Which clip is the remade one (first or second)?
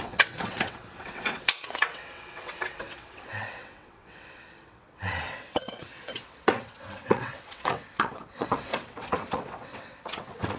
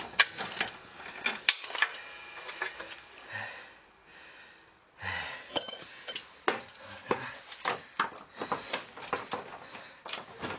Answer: first